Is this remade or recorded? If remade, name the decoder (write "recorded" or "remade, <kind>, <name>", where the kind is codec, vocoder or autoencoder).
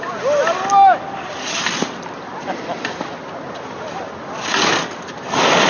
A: recorded